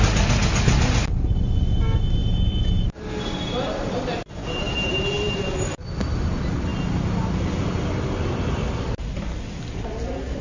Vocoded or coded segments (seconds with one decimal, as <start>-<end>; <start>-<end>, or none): none